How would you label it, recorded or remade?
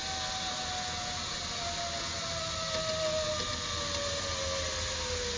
recorded